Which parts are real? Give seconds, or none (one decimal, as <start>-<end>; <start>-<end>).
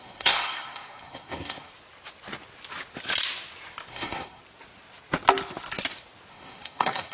1.7-3.9; 4.4-6.3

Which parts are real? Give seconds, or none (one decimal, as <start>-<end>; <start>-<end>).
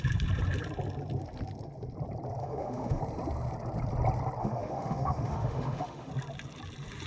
0.0-2.4; 3.0-4.4; 6.1-7.1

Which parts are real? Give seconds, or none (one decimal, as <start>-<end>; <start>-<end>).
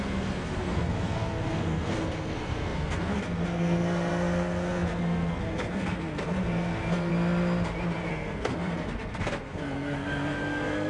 7.1-8.1